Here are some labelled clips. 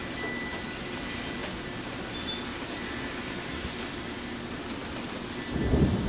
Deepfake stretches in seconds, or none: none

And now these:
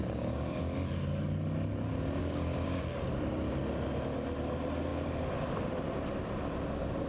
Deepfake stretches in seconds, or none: 0.0-0.6; 2.2-2.8